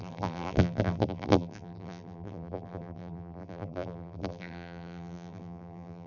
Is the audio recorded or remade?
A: remade